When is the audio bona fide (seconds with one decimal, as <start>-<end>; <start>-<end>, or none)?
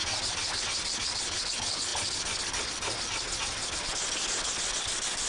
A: 0.0-5.3